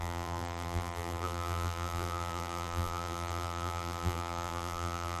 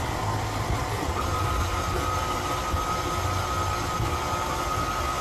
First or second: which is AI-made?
first